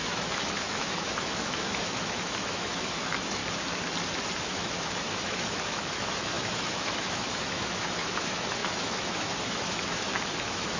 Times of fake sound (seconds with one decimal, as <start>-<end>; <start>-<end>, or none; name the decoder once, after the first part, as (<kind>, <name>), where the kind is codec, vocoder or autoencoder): 0.0-3.4 (autoencoder, DAC-VAE); 4.4-10.8